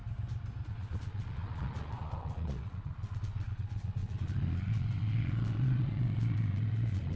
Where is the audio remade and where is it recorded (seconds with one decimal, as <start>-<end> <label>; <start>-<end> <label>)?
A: 0.0-0.7 recorded; 0.7-7.2 remade